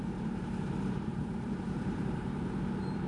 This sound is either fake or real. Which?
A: fake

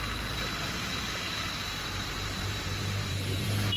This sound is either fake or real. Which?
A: fake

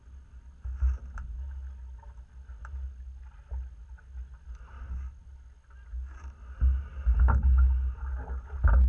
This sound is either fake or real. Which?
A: real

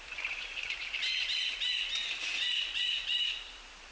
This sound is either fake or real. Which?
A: real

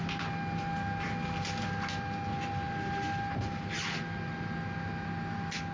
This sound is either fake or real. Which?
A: real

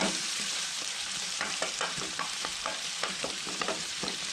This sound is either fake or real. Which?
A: fake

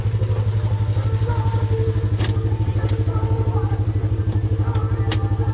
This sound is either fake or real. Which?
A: real